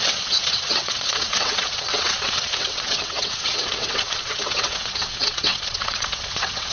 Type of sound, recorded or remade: remade